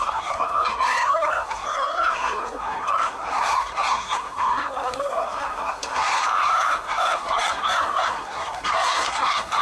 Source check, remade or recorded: remade